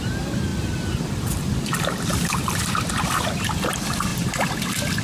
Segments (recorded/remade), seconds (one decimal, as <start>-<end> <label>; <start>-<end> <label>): 0.0-0.5 recorded; 0.5-3.5 remade; 3.5-5.0 recorded